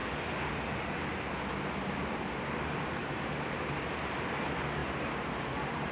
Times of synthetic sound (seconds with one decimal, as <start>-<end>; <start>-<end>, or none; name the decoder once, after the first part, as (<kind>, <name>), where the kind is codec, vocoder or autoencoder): 3.0-3.8 (vocoder, BigVGAN v2); 4.8-5.9